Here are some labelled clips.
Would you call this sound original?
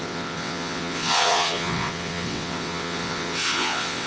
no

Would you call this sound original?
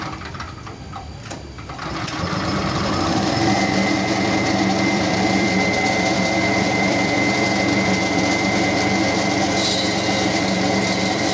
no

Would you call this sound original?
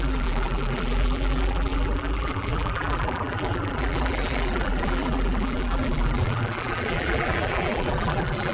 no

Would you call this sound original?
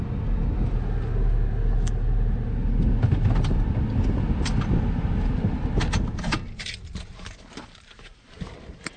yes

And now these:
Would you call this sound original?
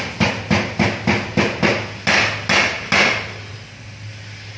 yes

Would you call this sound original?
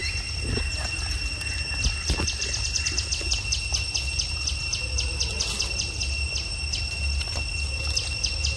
yes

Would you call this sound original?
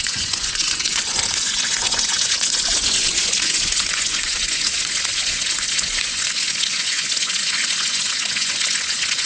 no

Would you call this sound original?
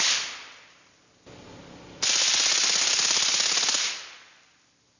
yes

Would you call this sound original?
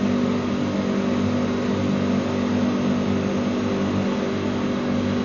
yes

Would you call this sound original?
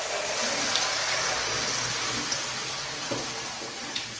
yes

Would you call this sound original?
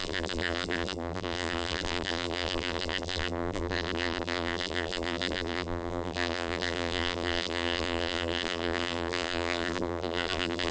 no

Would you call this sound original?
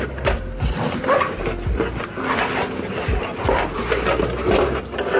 yes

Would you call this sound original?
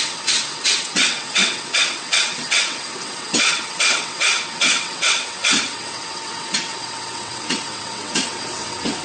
no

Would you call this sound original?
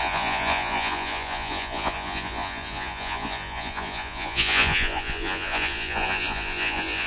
no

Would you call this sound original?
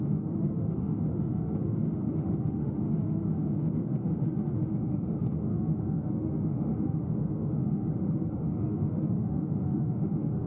no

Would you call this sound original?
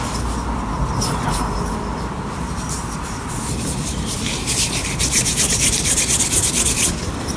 yes